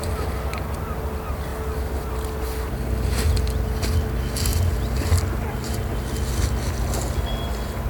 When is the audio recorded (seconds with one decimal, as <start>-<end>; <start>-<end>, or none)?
0.0-7.9